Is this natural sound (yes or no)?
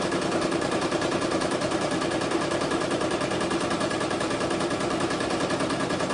no